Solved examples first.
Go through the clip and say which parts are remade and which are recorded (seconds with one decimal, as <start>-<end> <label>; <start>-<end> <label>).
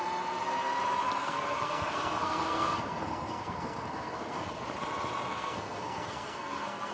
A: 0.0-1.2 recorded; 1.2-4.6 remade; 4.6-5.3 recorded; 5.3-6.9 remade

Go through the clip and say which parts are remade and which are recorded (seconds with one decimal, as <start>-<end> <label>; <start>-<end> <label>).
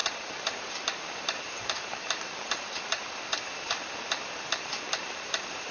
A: 0.0-5.7 remade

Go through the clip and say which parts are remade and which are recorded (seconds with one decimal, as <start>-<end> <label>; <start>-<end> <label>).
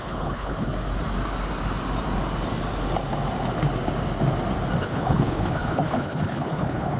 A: 0.0-0.7 remade; 0.7-4.8 recorded; 4.8-7.0 remade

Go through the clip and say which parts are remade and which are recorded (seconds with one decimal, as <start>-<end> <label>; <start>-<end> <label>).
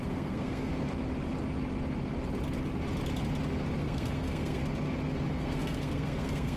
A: 0.0-0.7 remade; 0.7-3.8 recorded; 3.8-4.6 remade; 4.6-5.3 recorded; 5.3-6.6 remade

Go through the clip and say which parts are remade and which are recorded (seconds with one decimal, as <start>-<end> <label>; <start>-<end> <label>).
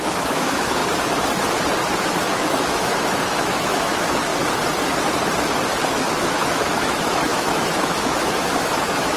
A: 0.0-0.8 remade; 0.8-2.0 recorded; 2.0-4.3 remade; 4.3-5.9 recorded; 5.9-9.2 remade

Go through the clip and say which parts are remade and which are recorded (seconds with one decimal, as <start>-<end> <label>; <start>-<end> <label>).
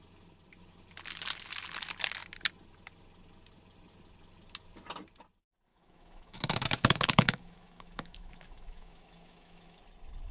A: 0.0-5.7 recorded; 5.7-9.8 remade; 9.8-10.3 recorded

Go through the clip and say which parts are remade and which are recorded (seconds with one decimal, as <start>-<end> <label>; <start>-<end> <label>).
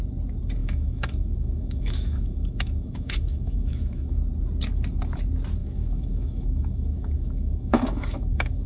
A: 0.0-0.6 recorded; 0.6-4.2 remade; 4.2-5.6 recorded; 5.6-8.7 remade